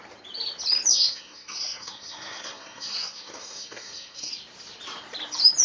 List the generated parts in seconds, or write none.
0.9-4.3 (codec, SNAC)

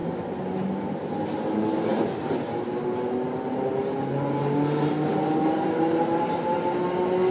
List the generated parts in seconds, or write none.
none

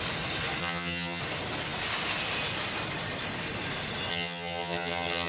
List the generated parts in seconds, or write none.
0.6-1.2 (vocoder, HiFi-GAN); 4.1-5.3

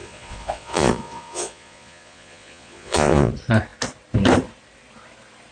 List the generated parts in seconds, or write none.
0.0-3.3 (vocoder, Vocos)

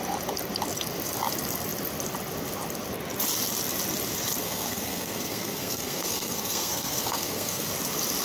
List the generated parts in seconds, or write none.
4.4-7.7 (codec, SNAC)

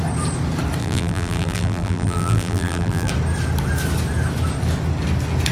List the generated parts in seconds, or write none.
0.8-3.1 (vocoder, BigVGAN v2)